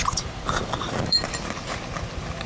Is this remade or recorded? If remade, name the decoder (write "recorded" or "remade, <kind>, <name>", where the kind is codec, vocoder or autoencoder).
remade, vocoder, BigVGAN v2